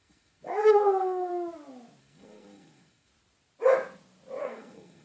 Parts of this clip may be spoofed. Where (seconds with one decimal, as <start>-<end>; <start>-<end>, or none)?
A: 0.0-1.3; 2.0-3.1; 4.4-5.0